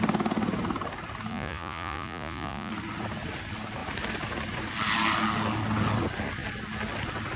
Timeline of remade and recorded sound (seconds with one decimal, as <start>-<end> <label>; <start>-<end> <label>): 0.0-1.3 recorded; 1.3-2.7 remade; 2.7-7.4 recorded